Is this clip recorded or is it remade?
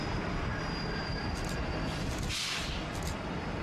recorded